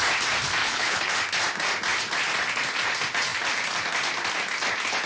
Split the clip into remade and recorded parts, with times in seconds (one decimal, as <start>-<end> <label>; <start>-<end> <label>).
0.0-0.6 recorded; 0.6-1.1 remade; 1.1-5.1 recorded